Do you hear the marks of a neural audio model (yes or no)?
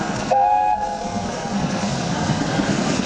yes